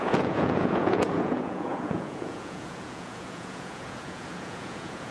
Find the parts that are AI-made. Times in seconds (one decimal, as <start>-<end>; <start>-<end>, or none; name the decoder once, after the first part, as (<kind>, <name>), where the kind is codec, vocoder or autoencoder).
0.0-5.1 (vocoder, Vocos)